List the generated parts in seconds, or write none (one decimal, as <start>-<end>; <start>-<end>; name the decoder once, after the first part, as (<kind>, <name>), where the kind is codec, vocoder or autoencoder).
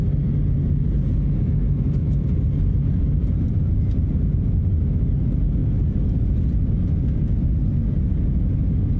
2.0-3.8 (vocoder, BigVGAN v2)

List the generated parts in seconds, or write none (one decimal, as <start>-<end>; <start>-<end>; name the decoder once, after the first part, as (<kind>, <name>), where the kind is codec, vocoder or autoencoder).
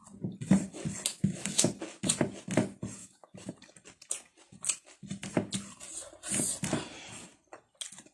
1.1-1.7 (autoencoder, DAC-VAE); 3.0-3.5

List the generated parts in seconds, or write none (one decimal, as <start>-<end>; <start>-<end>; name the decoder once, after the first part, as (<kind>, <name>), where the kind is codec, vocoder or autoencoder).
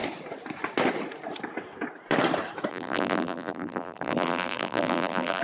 2.7-5.4 (vocoder, BigVGAN v2)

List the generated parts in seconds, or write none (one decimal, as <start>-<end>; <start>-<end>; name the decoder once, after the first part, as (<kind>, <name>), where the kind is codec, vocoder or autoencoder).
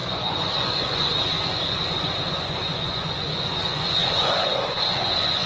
0.0-5.5 (vocoder, Vocos)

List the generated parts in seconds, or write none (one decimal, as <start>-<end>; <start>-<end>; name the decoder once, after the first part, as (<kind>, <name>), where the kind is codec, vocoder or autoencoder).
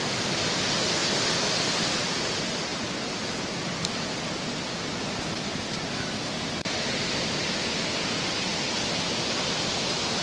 none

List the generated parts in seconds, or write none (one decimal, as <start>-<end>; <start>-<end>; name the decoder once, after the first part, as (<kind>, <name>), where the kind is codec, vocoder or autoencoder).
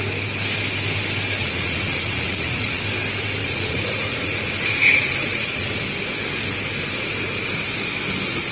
1.4-2.8 (vocoder, Vocos); 3.4-5.8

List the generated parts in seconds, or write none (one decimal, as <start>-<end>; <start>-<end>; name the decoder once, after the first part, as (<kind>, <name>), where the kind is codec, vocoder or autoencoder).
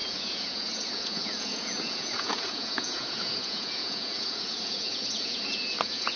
0.0-6.2 (vocoder, Vocos)